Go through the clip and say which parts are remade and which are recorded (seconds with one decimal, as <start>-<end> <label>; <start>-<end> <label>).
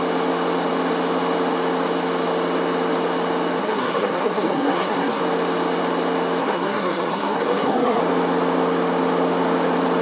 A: 0.0-3.6 recorded; 3.6-5.2 remade; 5.2-6.4 recorded; 6.4-8.0 remade; 8.0-10.0 recorded